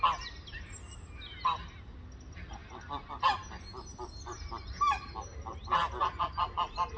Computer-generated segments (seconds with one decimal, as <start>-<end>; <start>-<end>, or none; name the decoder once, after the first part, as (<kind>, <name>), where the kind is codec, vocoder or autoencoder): none